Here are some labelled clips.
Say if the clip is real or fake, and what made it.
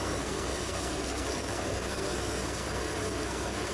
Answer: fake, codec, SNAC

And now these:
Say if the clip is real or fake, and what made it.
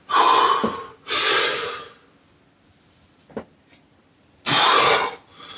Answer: real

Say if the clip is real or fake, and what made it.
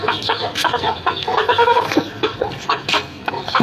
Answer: fake, codec, SNAC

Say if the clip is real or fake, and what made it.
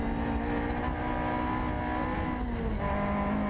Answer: real